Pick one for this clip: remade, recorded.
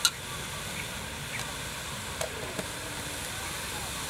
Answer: recorded